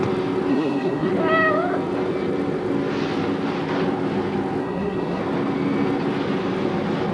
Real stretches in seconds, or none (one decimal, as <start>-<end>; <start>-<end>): 0.0-0.5; 1.1-4.6; 5.2-7.1